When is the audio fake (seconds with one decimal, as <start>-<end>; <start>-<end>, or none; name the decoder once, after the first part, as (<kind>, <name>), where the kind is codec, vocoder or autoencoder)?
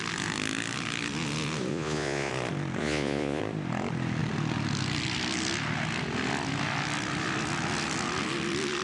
1.7-2.3 (vocoder, Vocos); 2.8-3.4